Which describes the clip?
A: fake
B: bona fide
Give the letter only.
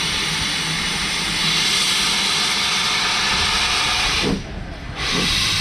B